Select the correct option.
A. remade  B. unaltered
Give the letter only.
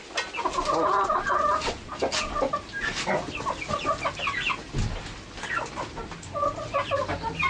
B